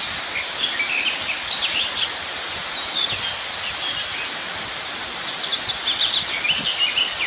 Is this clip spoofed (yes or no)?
no